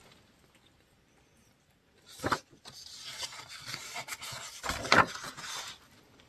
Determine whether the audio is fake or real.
real